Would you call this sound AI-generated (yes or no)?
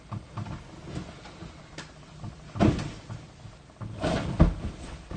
no